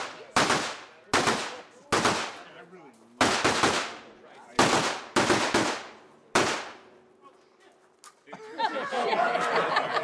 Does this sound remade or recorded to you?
recorded